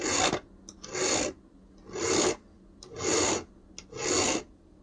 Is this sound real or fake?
real